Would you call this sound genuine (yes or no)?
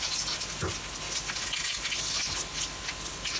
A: yes